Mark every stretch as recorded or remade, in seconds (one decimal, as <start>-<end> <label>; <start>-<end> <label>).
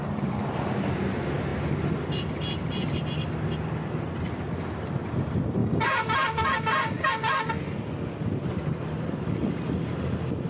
0.0-5.6 recorded; 5.6-7.4 remade; 7.4-10.5 recorded